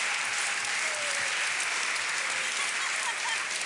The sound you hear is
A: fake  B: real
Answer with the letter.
B